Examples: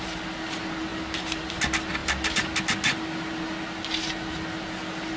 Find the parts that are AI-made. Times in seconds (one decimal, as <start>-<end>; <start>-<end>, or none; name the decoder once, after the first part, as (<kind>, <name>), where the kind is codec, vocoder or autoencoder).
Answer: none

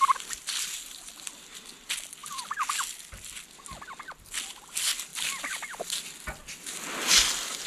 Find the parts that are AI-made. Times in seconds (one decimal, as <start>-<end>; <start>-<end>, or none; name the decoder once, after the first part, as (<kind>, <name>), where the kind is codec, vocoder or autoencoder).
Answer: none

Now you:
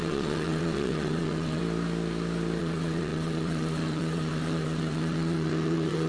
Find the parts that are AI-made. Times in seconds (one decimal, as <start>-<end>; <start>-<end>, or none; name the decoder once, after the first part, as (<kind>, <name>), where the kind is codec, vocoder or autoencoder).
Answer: 0.0-1.6 (vocoder, WaveNeXt); 2.6-6.1

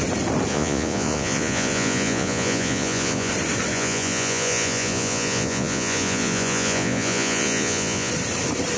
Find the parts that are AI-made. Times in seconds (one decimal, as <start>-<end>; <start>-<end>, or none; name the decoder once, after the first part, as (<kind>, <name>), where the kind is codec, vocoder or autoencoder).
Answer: 0.5-3.3 (vocoder, Vocos); 3.7-8.1

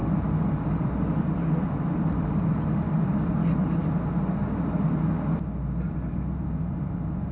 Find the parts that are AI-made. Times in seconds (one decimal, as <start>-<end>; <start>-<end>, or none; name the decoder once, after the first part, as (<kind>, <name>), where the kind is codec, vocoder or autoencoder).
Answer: 0.0-4.0 (vocoder, BigVGAN v2)

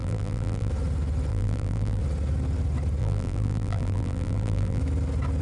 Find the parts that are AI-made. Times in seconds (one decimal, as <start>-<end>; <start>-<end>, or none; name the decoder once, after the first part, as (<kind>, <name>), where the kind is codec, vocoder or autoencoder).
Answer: 0.0-0.7 (vocoder, BigVGAN v2); 1.3-2.0; 3.0-4.8

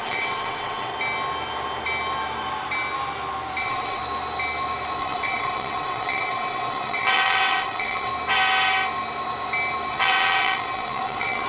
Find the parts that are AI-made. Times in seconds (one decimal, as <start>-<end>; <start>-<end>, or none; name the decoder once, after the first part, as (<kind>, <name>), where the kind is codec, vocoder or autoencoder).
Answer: 0.0-0.9 (vocoder, WaveNeXt); 3.6-4.0; 5.0-8.1; 9.9-11.5

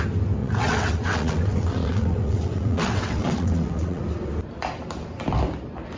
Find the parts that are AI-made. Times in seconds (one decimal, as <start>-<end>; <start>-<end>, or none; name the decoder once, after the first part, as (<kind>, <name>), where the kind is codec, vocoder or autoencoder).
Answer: 0.4-4.0 (vocoder, WaveNeXt)